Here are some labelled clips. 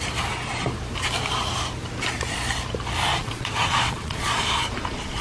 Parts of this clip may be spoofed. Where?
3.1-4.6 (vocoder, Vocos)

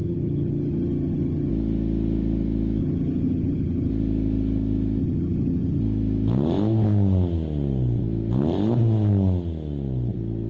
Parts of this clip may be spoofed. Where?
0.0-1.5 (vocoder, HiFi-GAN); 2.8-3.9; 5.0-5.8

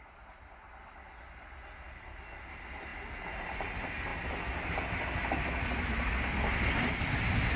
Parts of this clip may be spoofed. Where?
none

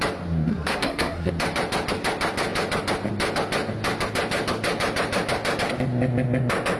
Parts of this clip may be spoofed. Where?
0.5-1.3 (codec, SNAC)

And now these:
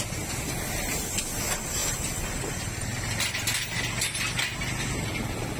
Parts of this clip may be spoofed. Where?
none

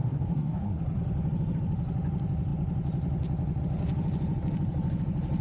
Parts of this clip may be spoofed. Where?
0.0-0.8 (codec, SNAC)

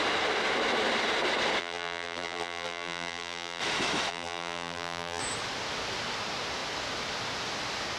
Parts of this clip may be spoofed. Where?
1.6-3.6 (vocoder, BigVGAN v2); 4.1-5.2